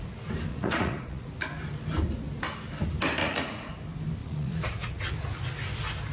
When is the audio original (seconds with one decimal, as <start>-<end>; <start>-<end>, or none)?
0.0-0.5; 1.3-3.2; 3.7-4.2; 5.0-6.1